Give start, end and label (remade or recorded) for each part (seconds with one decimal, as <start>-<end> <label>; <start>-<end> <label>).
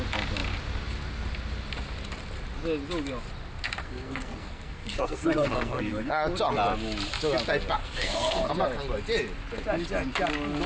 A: 0.0-3.8 recorded; 3.8-6.1 remade; 6.1-7.8 recorded; 7.8-8.5 remade; 8.5-10.7 recorded